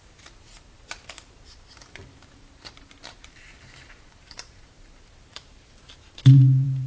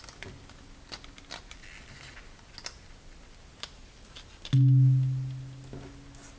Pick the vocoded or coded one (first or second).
first